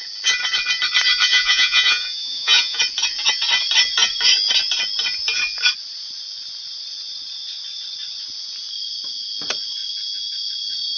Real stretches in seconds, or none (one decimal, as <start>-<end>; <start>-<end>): 0.0-1.3; 2.8-11.0